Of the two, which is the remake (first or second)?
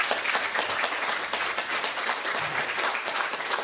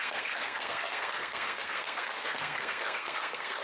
second